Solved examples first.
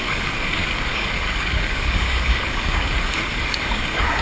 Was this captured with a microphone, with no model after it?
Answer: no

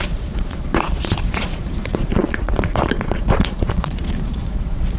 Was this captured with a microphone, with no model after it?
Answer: no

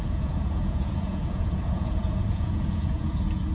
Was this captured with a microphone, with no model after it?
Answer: no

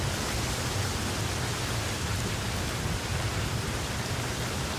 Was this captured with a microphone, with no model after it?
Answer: yes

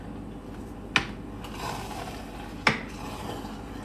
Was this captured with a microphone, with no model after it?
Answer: yes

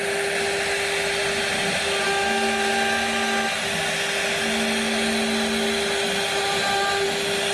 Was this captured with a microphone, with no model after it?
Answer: yes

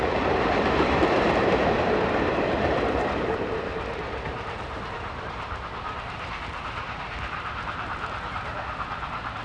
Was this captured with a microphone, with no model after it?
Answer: no